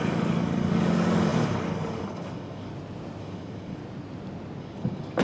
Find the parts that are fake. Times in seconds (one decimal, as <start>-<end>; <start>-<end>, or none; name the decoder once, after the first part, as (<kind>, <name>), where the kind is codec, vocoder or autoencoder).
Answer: 0.0-2.7 (codec, DAC); 3.2-3.8; 4.6-5.2